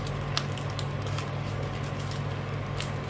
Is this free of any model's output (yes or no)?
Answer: yes